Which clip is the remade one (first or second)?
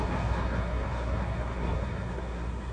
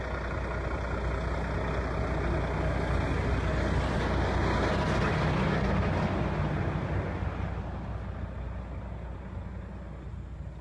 first